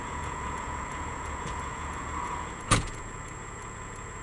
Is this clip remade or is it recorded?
remade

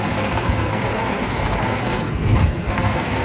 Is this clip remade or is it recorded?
remade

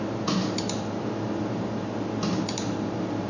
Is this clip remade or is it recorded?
remade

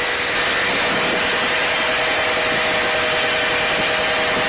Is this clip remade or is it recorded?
recorded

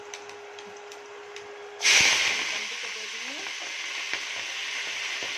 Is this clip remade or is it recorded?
recorded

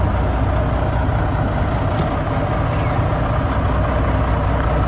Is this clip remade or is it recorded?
recorded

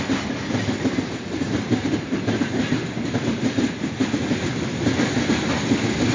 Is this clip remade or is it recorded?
recorded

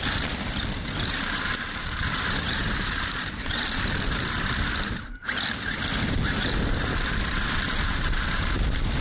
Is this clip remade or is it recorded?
remade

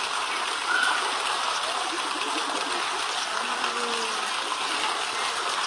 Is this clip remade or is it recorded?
recorded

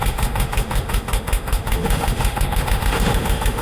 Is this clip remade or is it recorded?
remade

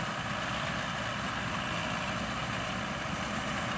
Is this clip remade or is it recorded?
recorded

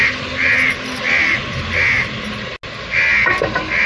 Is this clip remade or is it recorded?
recorded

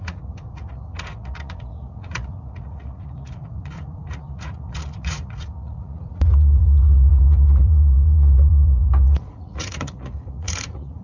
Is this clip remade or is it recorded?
remade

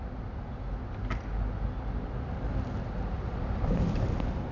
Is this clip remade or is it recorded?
recorded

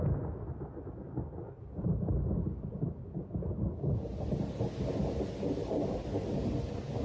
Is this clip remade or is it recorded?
recorded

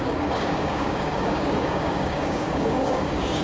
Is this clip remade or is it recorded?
remade